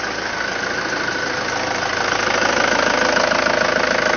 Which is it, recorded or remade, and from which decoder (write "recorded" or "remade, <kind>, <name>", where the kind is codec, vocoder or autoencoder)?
recorded